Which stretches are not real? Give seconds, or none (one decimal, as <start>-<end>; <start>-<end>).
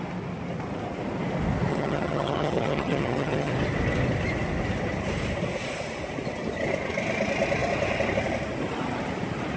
1.7-3.5